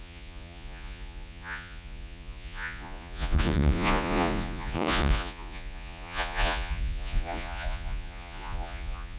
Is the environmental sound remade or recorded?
remade